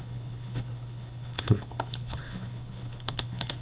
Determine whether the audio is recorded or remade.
remade